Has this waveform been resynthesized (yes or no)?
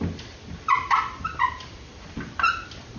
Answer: no